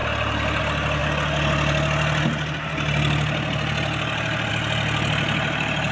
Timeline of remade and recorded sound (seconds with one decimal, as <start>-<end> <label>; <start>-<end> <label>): 0.0-5.9 recorded

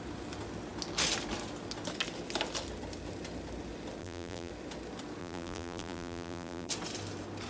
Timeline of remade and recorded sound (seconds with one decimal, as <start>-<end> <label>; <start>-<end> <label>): 0.0-4.0 recorded; 4.0-4.5 remade; 4.5-5.2 recorded; 5.2-6.7 remade; 6.7-7.5 recorded